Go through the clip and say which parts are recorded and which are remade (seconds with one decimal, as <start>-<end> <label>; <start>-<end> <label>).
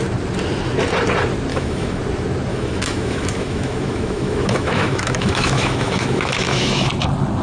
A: 0.0-1.5 recorded; 1.5-2.0 remade; 2.0-2.5 recorded; 2.5-6.9 remade; 6.9-7.4 recorded